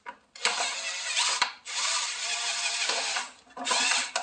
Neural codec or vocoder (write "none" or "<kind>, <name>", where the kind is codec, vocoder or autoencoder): none